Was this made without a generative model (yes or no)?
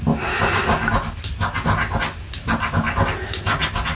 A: yes